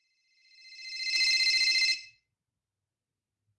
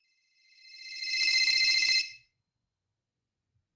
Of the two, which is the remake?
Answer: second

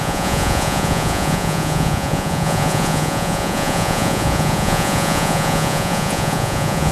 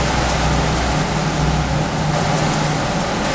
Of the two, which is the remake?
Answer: first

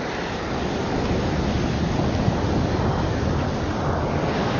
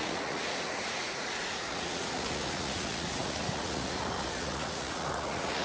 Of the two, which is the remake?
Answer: second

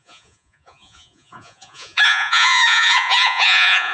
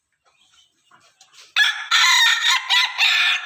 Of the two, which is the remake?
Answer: first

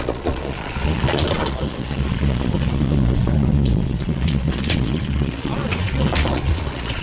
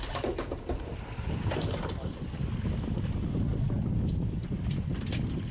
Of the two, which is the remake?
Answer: first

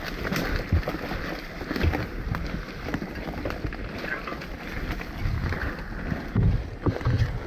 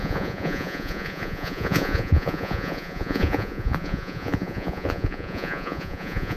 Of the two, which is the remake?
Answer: second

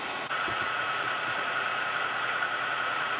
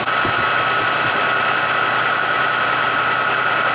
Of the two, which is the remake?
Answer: first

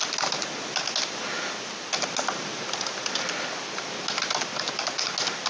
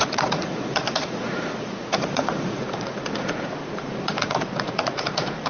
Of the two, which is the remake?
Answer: second